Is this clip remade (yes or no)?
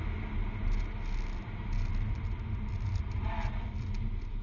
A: no